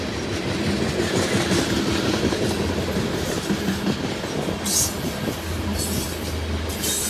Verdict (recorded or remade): recorded